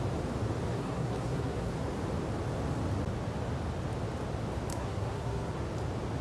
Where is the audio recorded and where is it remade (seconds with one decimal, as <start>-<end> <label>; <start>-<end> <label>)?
0.0-0.7 recorded; 0.7-1.7 remade; 1.7-4.7 recorded; 4.7-5.5 remade; 5.5-6.2 recorded